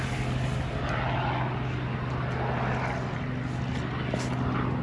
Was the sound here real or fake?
real